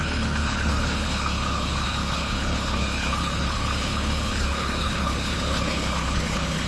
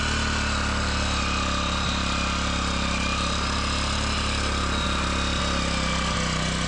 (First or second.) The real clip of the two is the second